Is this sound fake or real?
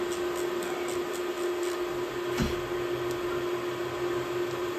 real